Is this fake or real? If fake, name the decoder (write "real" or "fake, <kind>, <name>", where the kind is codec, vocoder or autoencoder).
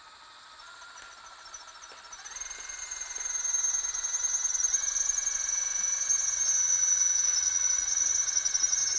real